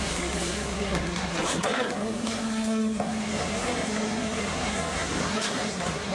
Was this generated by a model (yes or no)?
yes